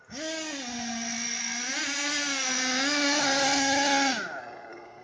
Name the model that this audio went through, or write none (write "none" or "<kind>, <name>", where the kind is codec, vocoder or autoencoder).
none